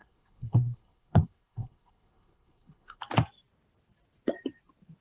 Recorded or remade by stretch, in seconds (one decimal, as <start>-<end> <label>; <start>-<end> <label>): 0.0-3.0 remade; 3.0-5.0 recorded